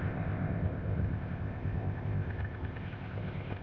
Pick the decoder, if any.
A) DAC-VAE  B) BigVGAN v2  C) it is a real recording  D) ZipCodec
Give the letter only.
D